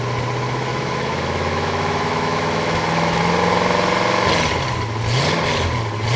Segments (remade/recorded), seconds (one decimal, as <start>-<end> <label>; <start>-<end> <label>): 0.0-0.7 recorded; 0.7-3.2 remade; 3.2-6.2 recorded